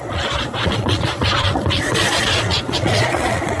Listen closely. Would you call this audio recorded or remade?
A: remade